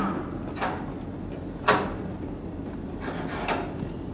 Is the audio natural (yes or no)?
yes